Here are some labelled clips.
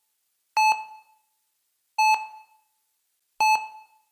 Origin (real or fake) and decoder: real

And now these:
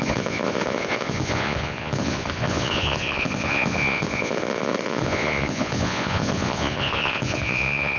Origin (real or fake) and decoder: fake, vocoder, Vocos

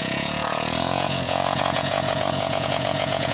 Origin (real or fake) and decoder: fake, vocoder, Vocos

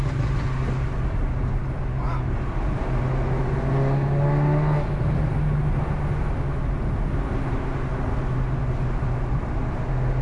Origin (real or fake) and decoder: real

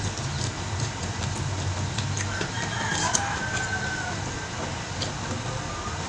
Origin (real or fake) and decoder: real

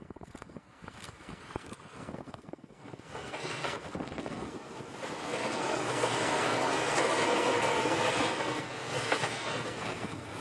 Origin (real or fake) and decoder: fake, codec, SNAC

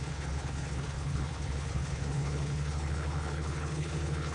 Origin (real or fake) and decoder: fake, codec, HILCodec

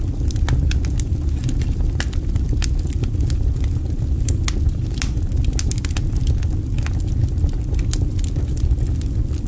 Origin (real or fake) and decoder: real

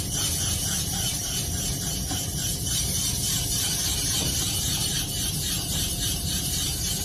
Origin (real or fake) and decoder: fake, vocoder, BigVGAN v2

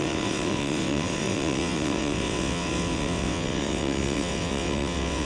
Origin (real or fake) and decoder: fake, vocoder, WaveNeXt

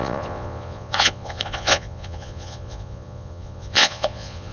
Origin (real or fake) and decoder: fake, vocoder, Vocos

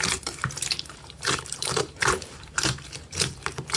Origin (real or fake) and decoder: fake, vocoder, BigVGAN v2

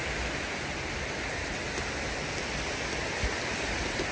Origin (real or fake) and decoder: real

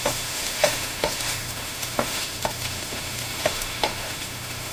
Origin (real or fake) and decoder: fake, autoencoder, DAC-VAE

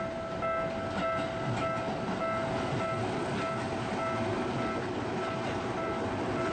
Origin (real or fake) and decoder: real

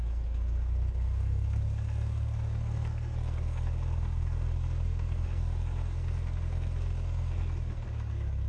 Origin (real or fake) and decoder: fake, codec, SNAC